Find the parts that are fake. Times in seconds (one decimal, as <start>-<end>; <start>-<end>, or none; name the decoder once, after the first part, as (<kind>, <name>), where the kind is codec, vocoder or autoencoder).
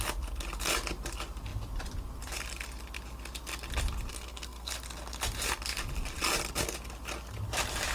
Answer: 4.1-4.7 (codec, SNAC)